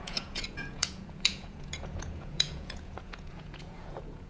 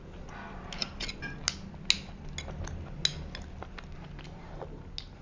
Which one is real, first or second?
second